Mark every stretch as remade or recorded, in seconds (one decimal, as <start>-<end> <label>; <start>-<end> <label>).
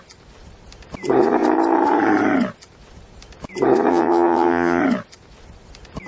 0.0-3.9 recorded; 3.9-4.8 remade; 4.8-6.1 recorded